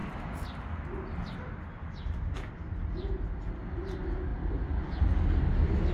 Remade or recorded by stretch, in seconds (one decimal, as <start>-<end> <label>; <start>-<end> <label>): 0.0-5.9 recorded

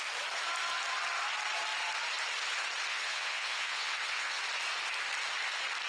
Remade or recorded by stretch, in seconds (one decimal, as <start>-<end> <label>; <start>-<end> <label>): 0.0-2.9 recorded; 2.9-4.4 remade; 4.4-5.9 recorded

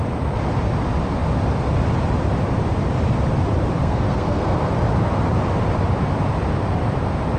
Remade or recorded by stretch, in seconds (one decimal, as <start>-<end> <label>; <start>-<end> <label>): 0.0-3.8 recorded; 3.8-4.7 remade; 4.7-7.4 recorded

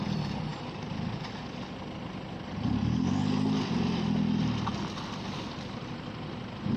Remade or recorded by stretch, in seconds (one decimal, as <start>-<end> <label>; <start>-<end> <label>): 0.0-6.8 recorded

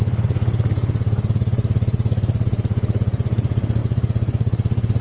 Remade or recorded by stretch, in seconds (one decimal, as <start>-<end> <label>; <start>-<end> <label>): 0.0-3.0 remade; 3.0-3.8 recorded; 3.8-5.0 remade